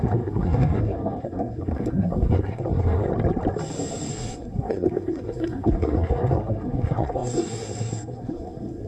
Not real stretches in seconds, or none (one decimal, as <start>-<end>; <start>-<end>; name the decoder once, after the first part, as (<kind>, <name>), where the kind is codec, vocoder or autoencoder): 0.0-3.1 (codec, SNAC); 4.1-8.9